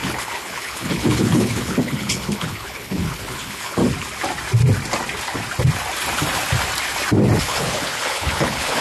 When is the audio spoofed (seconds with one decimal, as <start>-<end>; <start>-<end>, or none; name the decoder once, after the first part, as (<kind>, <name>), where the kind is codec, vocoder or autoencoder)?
0.0-3.8 (codec, HILCodec); 7.4-8.8